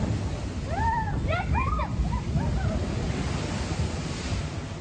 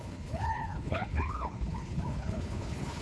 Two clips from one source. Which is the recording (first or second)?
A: first